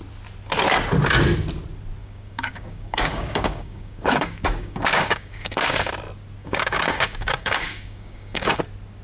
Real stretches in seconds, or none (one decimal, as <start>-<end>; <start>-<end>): 0.0-2.0; 5.9-6.4; 8.6-9.0